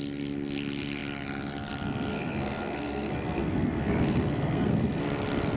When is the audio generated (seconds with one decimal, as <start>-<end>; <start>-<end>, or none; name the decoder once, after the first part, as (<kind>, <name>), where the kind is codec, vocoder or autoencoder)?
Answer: 2.1-5.0 (codec, SNAC)